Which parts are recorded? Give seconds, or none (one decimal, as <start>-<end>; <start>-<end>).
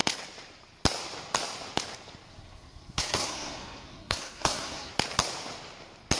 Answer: 0.0-2.3; 4.9-6.2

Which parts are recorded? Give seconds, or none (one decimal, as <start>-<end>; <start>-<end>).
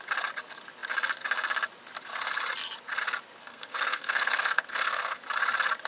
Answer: 0.0-3.4; 5.2-5.9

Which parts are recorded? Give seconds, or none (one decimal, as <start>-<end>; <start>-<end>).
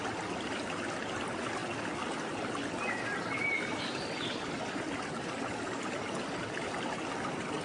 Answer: 0.0-7.6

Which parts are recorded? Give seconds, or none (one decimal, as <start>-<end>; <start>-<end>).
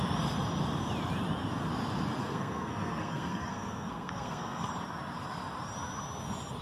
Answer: 0.0-2.2; 4.7-6.6